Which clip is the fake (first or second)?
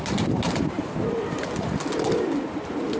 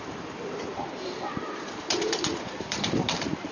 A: second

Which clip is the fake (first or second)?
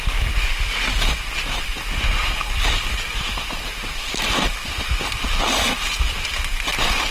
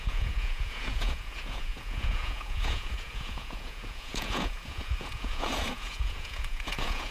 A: second